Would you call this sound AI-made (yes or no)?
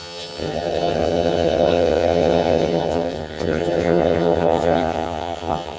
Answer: yes